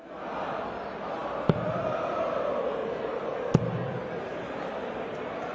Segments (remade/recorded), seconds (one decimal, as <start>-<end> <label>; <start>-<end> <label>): 0.0-5.5 recorded